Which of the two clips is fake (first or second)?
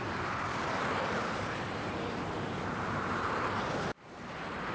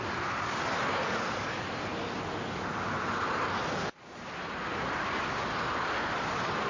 first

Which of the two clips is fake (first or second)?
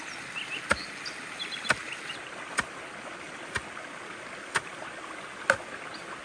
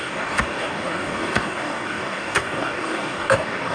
second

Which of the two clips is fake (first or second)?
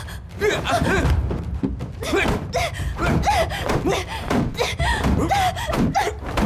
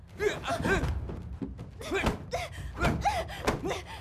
first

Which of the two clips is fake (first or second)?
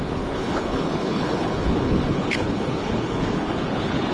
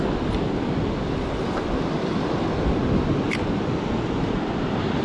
first